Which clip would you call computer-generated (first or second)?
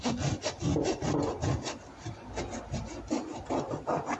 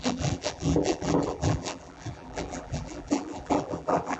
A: second